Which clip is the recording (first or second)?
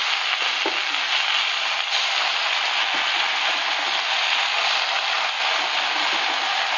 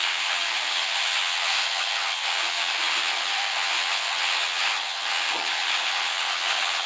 first